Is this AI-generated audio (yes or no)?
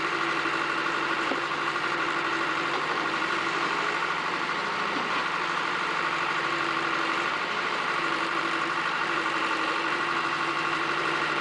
yes